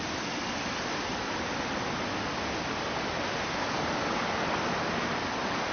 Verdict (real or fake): real